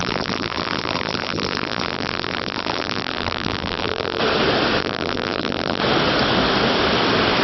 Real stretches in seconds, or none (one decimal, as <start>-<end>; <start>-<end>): 4.2-4.8; 5.8-7.4